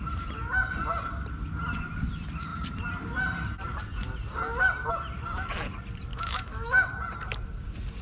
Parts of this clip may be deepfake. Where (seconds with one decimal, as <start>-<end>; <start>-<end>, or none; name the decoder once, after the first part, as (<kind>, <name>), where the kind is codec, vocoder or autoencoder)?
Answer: 6.1-6.9 (autoencoder, DAC-VAE)